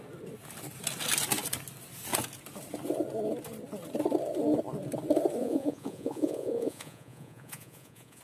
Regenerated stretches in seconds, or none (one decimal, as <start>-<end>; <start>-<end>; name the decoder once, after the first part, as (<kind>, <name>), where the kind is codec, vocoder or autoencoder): 5.4-8.2 (vocoder, Vocos)